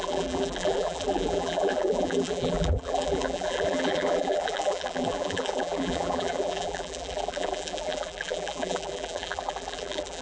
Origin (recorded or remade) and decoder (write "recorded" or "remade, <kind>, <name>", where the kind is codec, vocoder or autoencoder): remade, vocoder, BigVGAN v2